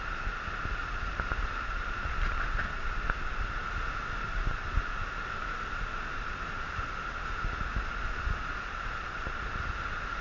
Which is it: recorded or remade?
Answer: recorded